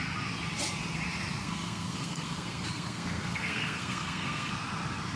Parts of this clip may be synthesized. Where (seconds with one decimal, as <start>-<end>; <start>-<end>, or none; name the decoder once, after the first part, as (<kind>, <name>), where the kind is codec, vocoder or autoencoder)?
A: 1.4-4.5 (codec, SNAC)